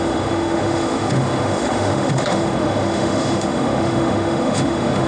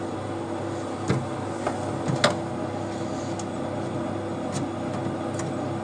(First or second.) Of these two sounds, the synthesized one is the first